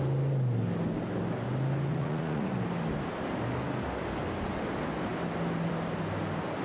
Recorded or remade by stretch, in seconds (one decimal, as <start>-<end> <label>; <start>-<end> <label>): 0.0-1.9 recorded; 1.9-2.5 remade; 2.5-6.6 recorded